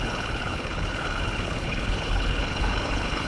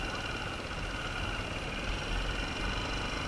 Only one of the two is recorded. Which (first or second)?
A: second